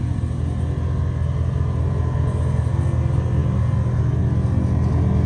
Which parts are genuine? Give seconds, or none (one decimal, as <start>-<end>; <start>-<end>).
0.0-5.3